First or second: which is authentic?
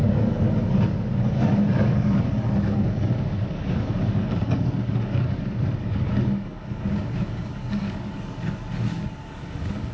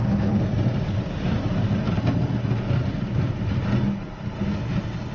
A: second